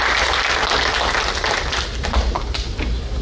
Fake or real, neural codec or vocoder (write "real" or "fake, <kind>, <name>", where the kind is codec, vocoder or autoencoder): real